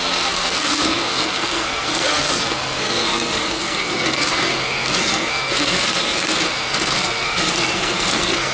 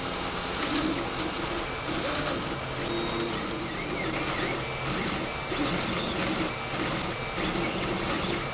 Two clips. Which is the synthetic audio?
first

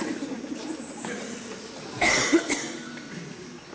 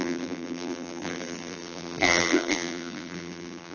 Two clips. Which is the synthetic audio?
second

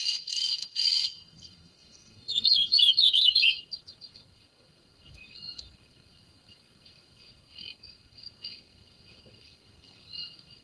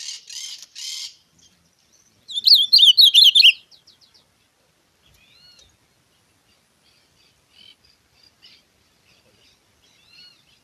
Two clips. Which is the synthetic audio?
first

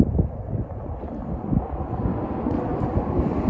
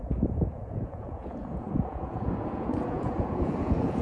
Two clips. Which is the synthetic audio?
second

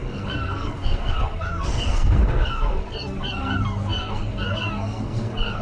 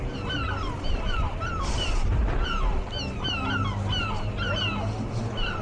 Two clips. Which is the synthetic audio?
first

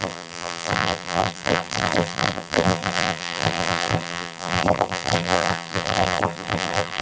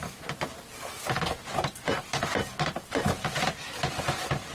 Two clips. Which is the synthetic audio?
first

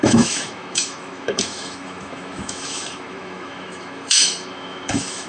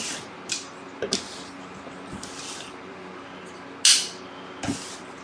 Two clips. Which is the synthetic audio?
first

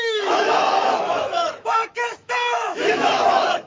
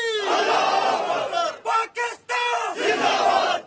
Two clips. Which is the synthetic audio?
first